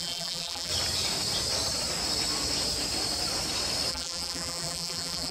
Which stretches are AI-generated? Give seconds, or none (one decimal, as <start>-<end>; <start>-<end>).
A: 0.0-0.7; 3.9-5.3